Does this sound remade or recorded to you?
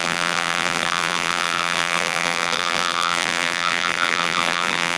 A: remade